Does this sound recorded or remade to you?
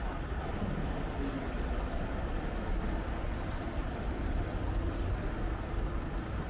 recorded